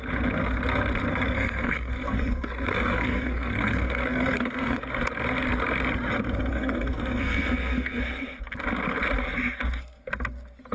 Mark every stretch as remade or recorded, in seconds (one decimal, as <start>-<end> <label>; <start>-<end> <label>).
0.0-1.1 recorded; 1.1-4.8 remade; 4.8-6.5 recorded; 6.5-8.0 remade; 8.0-10.7 recorded